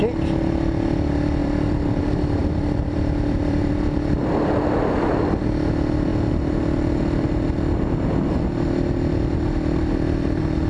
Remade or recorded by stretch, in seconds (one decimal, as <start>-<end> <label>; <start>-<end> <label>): 0.0-1.4 recorded; 1.4-2.0 remade; 2.0-2.4 recorded; 2.4-4.7 remade; 4.7-10.7 recorded